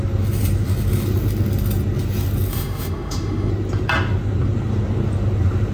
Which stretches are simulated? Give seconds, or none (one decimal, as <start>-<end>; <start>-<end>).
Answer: 2.5-3.5

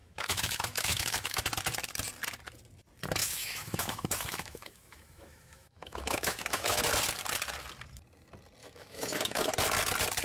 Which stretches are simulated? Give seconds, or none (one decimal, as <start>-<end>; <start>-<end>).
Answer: 0.0-1.4; 3.2-6.8; 8.6-9.5